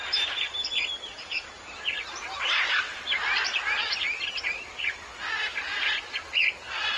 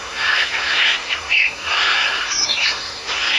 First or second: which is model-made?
second